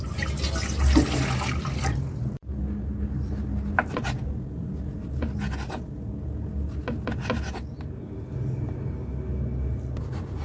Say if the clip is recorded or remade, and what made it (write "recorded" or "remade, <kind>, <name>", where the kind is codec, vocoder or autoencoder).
recorded